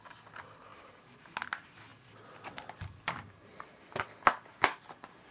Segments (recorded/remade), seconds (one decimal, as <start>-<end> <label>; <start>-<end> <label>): 0.0-5.3 recorded